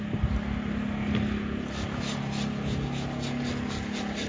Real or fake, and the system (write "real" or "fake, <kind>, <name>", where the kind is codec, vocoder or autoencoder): real